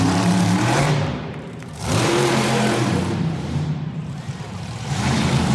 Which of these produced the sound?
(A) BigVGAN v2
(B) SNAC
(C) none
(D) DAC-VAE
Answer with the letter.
A